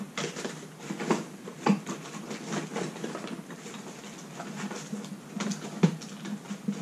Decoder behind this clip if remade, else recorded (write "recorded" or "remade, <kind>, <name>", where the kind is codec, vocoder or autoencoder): recorded